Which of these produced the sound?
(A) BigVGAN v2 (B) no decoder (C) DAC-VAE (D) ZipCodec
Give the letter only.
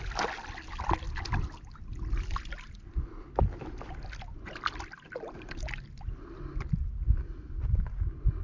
B